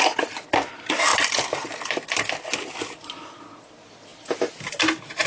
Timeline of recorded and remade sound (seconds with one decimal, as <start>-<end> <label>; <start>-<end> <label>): 0.0-5.3 recorded